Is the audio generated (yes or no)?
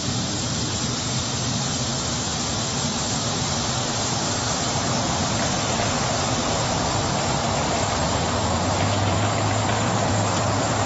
yes